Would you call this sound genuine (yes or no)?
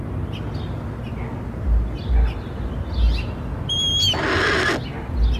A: yes